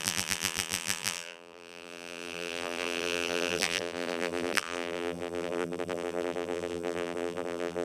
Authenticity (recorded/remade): remade